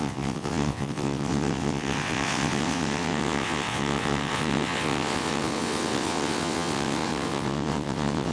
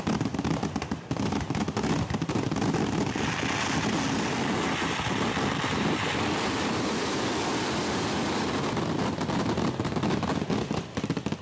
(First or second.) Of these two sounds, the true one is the second